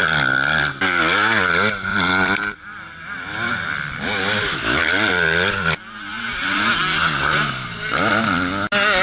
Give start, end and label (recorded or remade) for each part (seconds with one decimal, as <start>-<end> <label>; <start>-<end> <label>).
0.0-1.9 recorded; 1.9-5.1 remade; 5.1-6.1 recorded; 6.1-6.7 remade; 6.7-9.0 recorded